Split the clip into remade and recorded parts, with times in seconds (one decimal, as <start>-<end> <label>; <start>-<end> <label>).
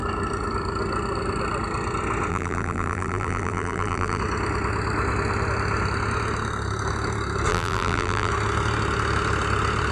0.0-2.3 recorded; 2.3-4.2 remade; 4.2-7.5 recorded; 7.5-8.3 remade; 8.3-9.9 recorded